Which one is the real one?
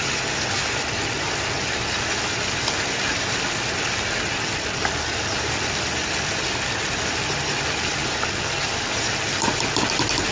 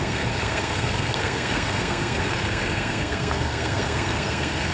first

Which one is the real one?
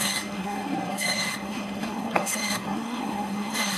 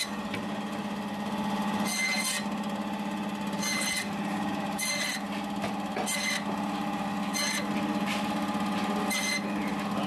second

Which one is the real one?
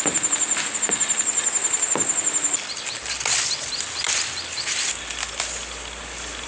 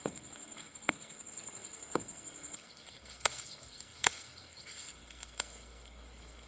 first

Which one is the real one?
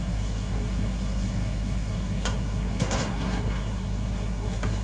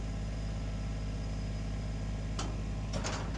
second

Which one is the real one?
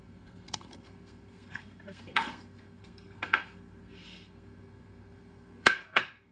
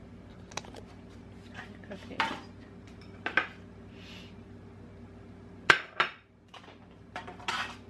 second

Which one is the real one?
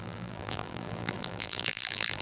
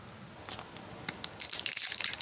second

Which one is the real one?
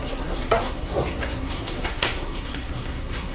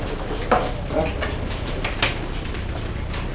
second